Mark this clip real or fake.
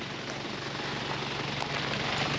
real